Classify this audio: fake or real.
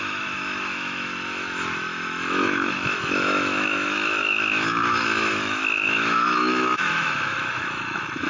fake